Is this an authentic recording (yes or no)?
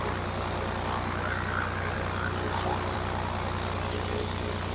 yes